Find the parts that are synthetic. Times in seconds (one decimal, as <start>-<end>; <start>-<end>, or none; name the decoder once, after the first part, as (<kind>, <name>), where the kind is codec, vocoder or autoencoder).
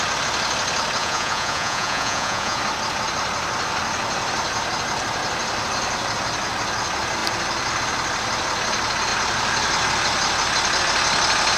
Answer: 1.0-2.6 (vocoder, Vocos)